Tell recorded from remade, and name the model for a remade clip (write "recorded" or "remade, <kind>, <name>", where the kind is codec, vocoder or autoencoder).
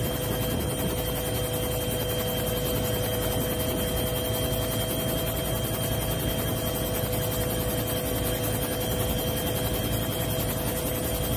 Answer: recorded